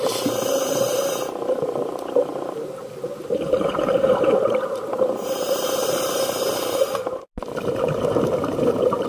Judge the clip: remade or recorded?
remade